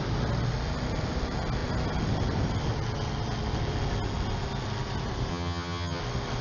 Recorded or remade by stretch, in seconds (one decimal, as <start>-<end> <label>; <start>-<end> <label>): 0.0-5.3 recorded; 5.3-6.0 remade; 6.0-6.4 recorded